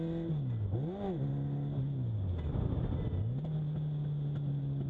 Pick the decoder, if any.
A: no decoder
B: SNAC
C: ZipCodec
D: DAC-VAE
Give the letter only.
A